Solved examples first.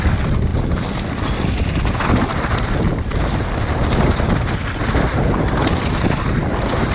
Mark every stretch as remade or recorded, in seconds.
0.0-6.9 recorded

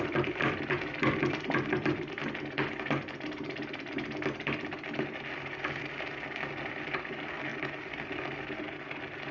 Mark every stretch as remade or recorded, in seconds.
0.0-9.3 recorded

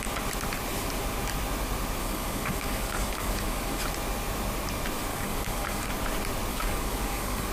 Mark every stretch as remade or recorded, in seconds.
0.0-2.0 recorded; 2.0-3.8 remade; 3.8-5.1 recorded; 5.1-5.9 remade; 5.9-6.5 recorded; 6.5-7.5 remade

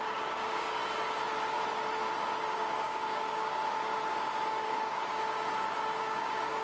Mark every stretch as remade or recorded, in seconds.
0.0-0.8 remade; 0.8-2.4 recorded; 2.4-3.6 remade; 3.6-4.5 recorded; 4.5-5.1 remade; 5.1-6.0 recorded; 6.0-6.6 remade

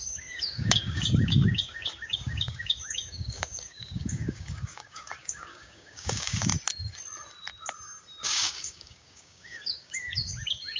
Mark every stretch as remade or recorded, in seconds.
0.0-6.5 remade; 6.5-8.2 recorded; 8.2-10.8 remade

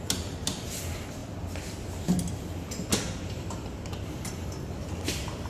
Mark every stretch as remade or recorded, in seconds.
0.0-5.5 recorded

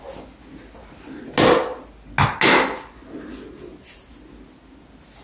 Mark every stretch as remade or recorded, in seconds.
0.0-5.2 recorded

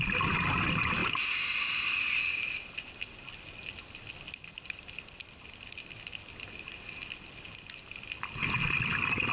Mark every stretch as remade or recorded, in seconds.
0.0-9.3 recorded